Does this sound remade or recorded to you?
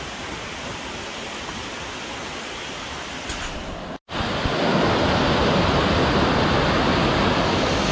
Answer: recorded